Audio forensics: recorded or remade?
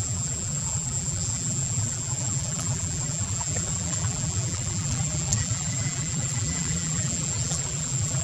remade